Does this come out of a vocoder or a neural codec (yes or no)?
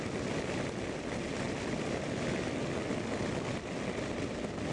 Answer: no